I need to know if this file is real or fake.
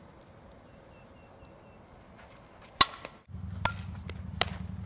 real